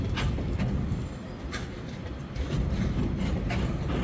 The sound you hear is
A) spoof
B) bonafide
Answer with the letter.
B